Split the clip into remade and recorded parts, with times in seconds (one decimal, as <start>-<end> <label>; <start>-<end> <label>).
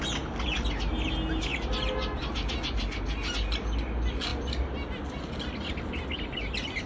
0.0-6.9 recorded